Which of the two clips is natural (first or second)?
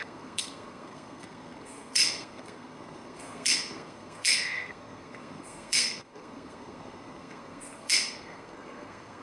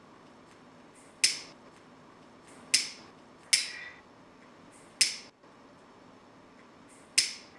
second